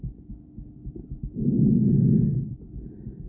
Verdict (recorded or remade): recorded